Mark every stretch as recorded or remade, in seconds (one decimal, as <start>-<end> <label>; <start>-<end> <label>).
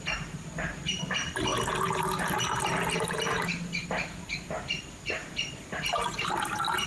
0.0-6.9 recorded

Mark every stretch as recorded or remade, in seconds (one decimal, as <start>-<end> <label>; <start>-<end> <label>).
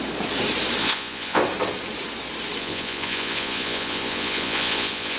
0.0-0.8 recorded; 0.8-1.4 remade; 1.4-2.6 recorded; 2.6-5.2 remade